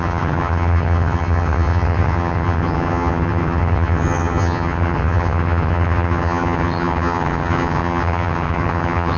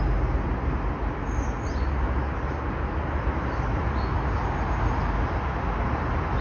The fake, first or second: first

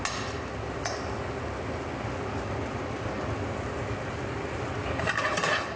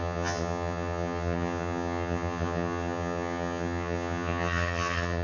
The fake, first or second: second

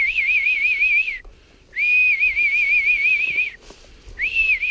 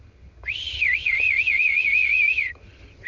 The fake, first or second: second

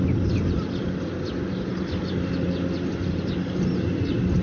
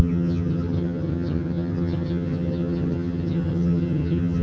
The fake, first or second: second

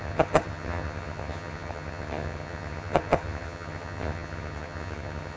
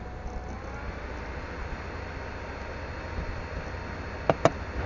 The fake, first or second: first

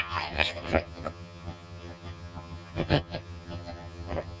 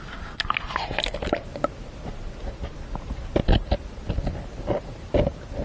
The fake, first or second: first